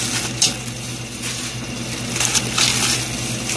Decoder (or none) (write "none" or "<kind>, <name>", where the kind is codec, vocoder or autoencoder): none